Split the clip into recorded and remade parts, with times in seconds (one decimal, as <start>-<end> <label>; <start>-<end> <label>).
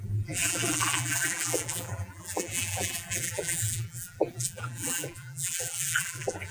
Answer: 0.0-6.5 remade